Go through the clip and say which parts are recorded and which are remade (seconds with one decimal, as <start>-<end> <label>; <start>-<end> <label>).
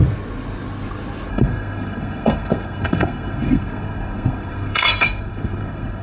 0.0-1.3 recorded; 1.3-6.0 remade